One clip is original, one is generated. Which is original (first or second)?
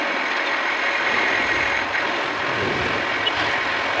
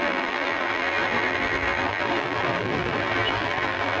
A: first